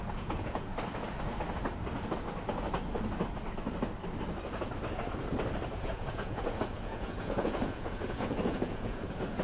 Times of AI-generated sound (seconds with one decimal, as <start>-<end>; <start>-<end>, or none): 0.0-0.7; 5.7-9.4